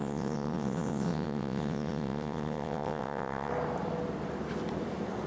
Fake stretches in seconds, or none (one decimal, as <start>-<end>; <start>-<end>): 0.0-3.5